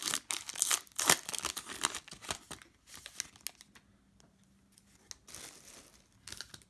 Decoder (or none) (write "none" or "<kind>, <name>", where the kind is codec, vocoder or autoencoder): none